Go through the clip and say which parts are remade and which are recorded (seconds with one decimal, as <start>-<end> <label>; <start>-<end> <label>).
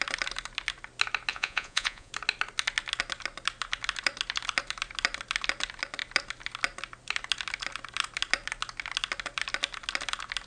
0.0-1.3 recorded; 1.3-2.1 remade; 2.1-10.5 recorded